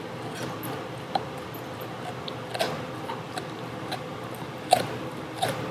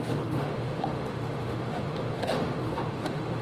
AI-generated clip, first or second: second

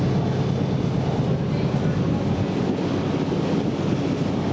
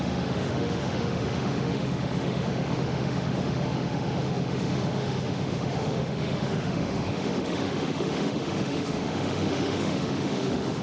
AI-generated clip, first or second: second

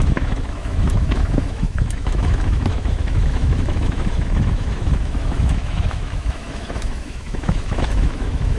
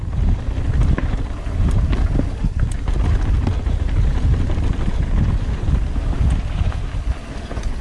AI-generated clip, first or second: first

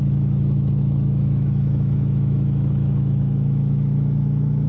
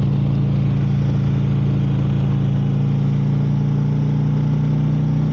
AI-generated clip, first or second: first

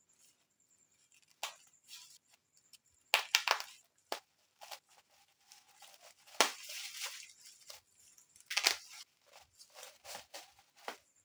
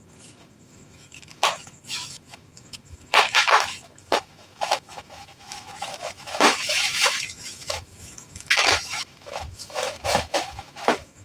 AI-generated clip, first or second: second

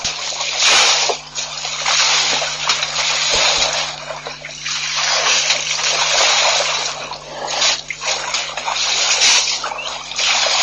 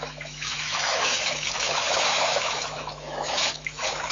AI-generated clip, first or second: second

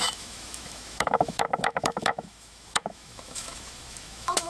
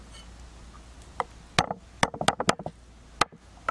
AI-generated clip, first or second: first